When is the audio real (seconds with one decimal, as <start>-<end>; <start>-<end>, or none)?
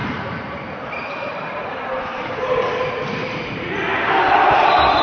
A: 3.0-5.0